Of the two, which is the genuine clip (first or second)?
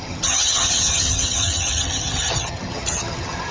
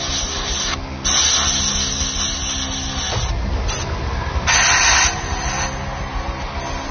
second